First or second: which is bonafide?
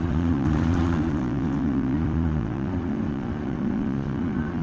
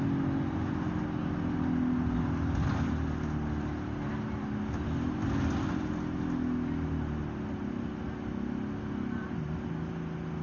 second